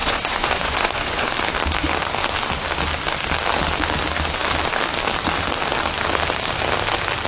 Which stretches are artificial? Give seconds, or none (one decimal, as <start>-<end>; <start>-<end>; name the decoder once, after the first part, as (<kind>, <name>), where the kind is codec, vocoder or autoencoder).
0.0-1.3 (vocoder, Vocos)